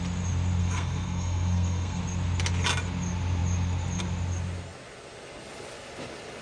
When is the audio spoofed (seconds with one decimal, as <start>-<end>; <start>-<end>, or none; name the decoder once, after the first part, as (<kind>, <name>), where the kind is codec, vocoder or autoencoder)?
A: 0.6-2.0 (codec, SNAC)

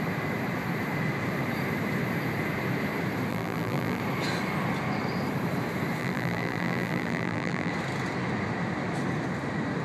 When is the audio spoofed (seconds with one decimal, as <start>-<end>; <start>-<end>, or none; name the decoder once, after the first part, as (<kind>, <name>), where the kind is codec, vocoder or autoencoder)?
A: 3.3-4.0 (vocoder, BigVGAN v2); 6.0-7.7

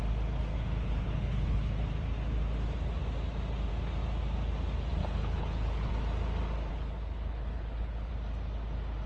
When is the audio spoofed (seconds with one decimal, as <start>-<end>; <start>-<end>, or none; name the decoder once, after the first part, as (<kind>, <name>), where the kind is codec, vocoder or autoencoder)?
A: 0.5-1.7 (codec, HILCodec); 5.0-5.9; 6.7-8.1